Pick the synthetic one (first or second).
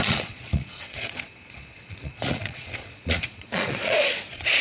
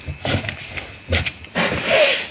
first